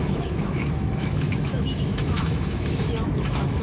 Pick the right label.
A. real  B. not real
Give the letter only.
B